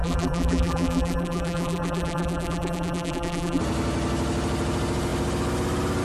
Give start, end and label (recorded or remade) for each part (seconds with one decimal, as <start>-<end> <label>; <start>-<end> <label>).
0.0-3.6 remade; 3.6-6.0 recorded